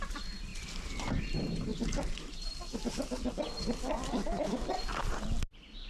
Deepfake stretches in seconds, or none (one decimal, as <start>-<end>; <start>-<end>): none